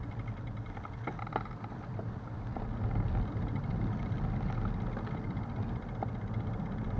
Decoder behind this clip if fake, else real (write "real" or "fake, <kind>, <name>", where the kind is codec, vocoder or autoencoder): real